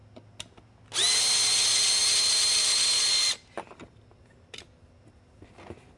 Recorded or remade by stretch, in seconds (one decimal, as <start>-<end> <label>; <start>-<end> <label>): 0.0-6.0 recorded